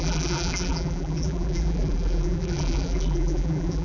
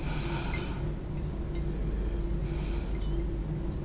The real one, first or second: second